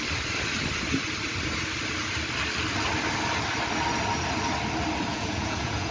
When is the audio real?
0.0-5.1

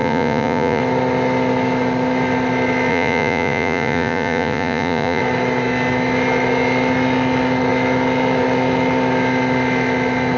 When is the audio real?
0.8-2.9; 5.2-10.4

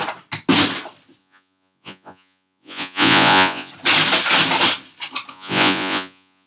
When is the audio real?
0.0-1.2; 3.7-5.3